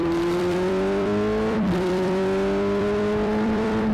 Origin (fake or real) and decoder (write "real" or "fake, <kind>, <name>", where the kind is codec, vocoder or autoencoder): fake, vocoder, BigVGAN v2